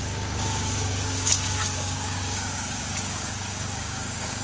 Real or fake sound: fake